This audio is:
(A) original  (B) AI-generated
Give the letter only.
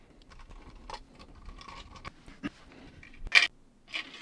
A